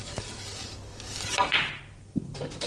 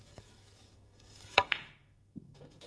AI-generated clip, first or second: second